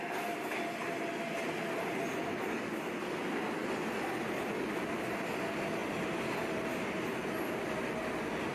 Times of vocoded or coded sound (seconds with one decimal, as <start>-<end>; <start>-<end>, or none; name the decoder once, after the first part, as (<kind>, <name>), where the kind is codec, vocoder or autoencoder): none

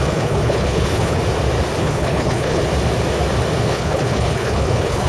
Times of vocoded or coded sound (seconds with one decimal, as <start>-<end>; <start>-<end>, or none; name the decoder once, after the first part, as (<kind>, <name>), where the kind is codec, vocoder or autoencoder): 0.0-1.2 (codec, HILCodec); 1.8-2.6; 3.7-5.1

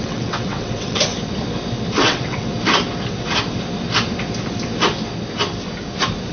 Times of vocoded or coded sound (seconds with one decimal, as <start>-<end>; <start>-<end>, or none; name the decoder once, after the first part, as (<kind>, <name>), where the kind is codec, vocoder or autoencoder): 0.0-1.1 (vocoder, WaveNeXt); 1.9-2.5

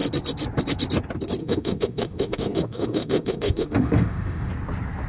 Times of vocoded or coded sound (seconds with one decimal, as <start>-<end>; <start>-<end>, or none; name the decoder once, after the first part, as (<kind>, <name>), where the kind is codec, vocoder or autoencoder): 1.4-4.5 (autoencoder, DAC-VAE)

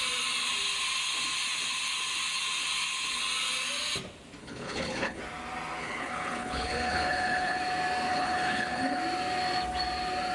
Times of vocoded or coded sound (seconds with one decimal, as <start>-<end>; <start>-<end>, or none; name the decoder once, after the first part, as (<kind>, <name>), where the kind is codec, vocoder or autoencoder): 4.4-5.2 (codec, HILCodec); 5.8-7.6; 8.1-9.0

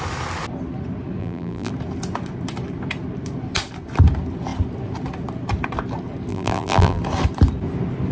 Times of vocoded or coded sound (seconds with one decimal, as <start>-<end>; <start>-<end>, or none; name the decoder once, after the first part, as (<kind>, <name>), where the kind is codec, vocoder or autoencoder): 1.2-1.7 (vocoder, BigVGAN v2); 6.3-7.0

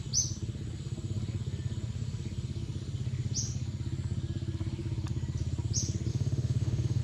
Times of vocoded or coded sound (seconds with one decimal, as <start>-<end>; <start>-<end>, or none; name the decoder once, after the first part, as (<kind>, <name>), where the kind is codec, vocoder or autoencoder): 6.1-7.0 (autoencoder, DAC-VAE)

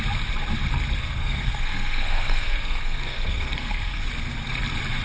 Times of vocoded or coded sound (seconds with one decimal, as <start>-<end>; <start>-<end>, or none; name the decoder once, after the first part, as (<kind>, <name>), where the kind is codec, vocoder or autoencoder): 1.0-4.0 (codec, SNAC)